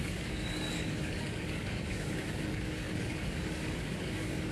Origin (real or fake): fake